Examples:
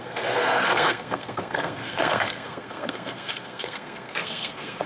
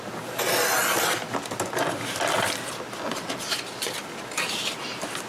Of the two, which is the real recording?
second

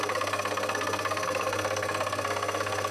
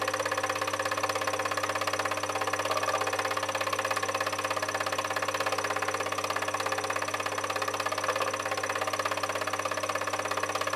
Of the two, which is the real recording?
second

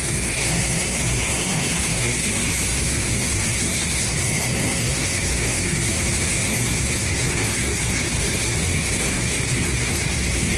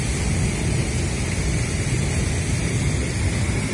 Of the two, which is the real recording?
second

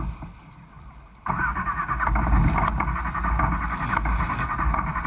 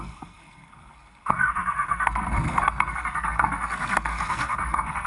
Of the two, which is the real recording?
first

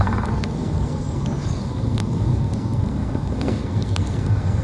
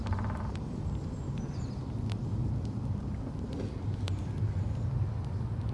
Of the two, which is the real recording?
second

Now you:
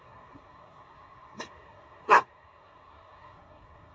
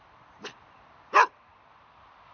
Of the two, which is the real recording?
second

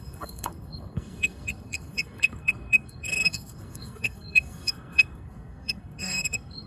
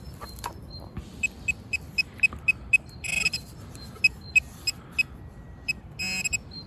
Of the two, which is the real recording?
second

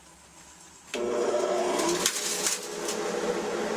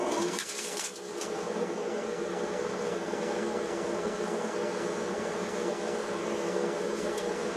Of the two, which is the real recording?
first